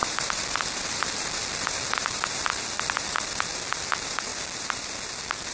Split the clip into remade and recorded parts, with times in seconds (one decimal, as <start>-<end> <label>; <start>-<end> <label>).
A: 0.0-5.5 remade